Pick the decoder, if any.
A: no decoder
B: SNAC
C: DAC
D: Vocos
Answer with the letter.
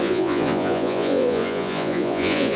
D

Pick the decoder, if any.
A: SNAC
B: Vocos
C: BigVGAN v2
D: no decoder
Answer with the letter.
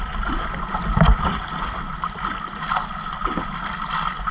D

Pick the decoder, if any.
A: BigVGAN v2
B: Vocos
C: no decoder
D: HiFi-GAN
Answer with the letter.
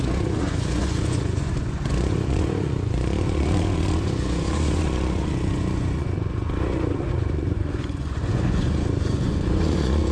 B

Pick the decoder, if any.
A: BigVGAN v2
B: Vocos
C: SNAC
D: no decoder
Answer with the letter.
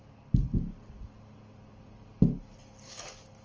D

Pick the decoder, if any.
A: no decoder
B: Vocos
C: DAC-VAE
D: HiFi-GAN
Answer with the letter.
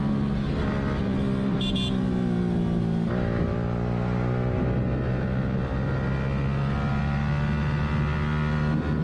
A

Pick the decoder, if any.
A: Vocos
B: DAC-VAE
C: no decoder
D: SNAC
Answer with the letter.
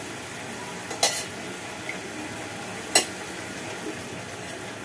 C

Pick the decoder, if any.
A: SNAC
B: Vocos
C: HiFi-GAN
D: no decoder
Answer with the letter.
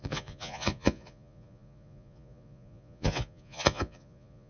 B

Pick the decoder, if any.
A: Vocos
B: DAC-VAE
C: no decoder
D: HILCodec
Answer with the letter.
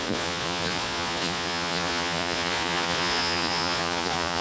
A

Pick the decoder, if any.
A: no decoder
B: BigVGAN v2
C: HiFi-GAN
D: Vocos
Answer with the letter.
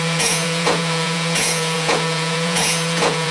D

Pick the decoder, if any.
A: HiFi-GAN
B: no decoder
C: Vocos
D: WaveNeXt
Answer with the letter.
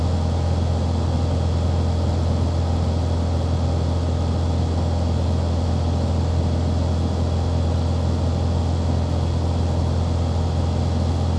B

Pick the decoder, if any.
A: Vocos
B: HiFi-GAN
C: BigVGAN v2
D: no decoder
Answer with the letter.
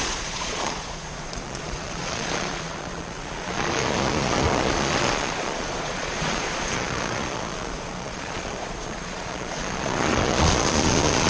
A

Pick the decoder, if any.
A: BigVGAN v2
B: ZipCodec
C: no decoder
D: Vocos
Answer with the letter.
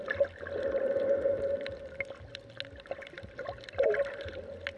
C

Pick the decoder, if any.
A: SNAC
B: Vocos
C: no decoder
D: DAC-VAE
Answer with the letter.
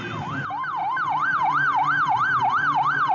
C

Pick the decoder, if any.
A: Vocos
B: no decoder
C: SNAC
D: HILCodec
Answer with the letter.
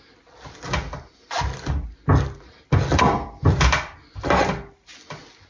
B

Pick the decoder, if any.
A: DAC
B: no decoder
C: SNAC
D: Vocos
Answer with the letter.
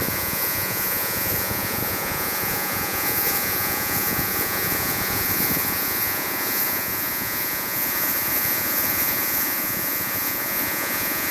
D